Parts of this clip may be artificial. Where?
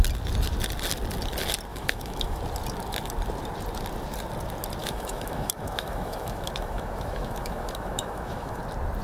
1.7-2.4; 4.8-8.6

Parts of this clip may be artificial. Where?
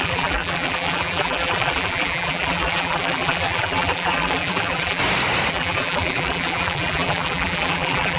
0.0-5.0; 5.5-8.2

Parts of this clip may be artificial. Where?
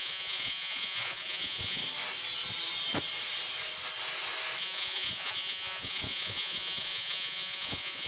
0.0-1.8; 4.6-8.1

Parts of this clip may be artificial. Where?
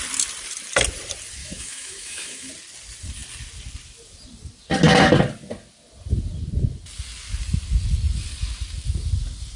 1.4-2.5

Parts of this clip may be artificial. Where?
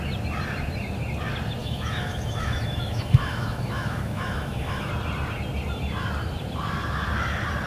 1.6-4.9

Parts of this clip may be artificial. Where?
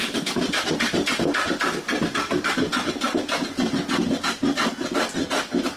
0.0-3.5; 4.0-4.7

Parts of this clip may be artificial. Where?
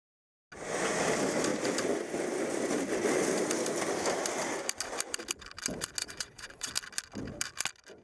6.0-6.7